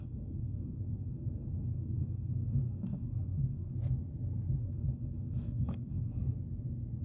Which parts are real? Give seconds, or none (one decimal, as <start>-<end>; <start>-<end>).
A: 3.7-4.6; 6.2-7.0